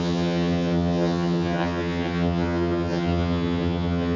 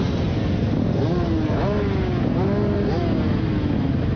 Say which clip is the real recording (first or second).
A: second